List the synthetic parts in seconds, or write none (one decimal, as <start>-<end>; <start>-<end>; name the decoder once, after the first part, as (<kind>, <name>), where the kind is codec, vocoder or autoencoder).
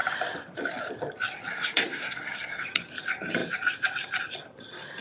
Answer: 1.5-2.6 (codec, SNAC)